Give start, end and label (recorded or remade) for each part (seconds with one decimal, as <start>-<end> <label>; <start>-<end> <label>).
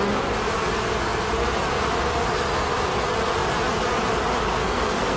0.0-4.5 recorded; 4.5-5.2 remade